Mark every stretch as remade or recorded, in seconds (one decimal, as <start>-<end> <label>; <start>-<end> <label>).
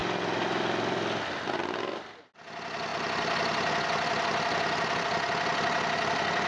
0.0-6.5 recorded